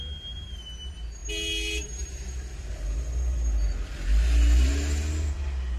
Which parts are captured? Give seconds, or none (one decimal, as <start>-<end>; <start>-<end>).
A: 0.0-5.8